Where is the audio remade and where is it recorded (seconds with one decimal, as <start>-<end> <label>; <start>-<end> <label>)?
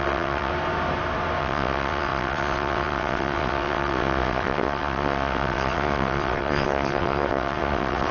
0.0-0.5 remade; 0.5-1.4 recorded; 1.4-8.1 remade